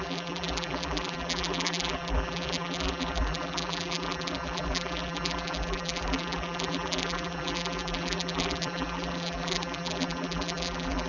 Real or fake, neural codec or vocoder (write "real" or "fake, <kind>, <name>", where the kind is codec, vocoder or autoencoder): fake, vocoder, BigVGAN v2